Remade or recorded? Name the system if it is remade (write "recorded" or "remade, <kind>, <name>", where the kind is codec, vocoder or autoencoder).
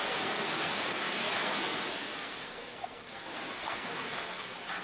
remade, codec, SNAC